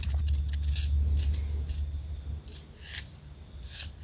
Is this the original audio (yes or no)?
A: yes